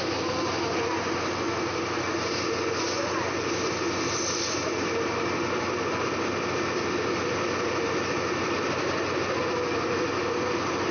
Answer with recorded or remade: recorded